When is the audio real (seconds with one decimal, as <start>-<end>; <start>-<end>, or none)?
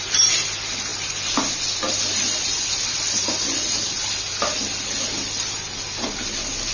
0.0-6.7